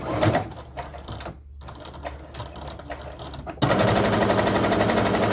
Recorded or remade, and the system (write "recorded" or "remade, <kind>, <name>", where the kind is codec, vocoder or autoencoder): recorded